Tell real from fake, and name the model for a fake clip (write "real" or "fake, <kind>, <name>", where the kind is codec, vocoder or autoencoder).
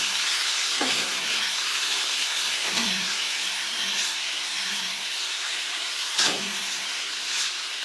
fake, codec, SNAC